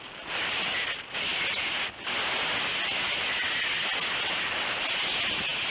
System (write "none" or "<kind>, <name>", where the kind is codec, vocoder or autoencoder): none